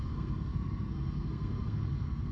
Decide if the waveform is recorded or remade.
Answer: remade